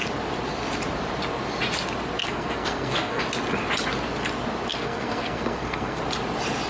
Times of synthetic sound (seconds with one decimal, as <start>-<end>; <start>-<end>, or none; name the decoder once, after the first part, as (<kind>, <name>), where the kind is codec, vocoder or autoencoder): 2.2-3.2 (codec, SNAC); 4.7-6.0